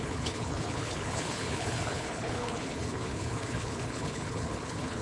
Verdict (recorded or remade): remade